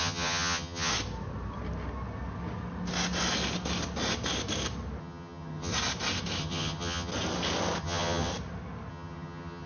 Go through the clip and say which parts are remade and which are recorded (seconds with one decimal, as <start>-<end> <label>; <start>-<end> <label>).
0.0-0.9 remade; 0.9-5.0 recorded; 5.0-5.7 remade; 5.7-6.4 recorded; 6.4-7.1 remade; 7.1-7.8 recorded; 7.8-8.3 remade; 8.3-8.9 recorded; 8.9-9.7 remade